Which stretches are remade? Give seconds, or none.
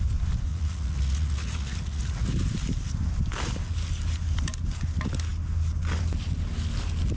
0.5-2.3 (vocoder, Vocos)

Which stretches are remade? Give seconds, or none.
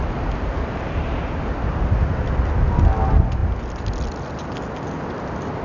none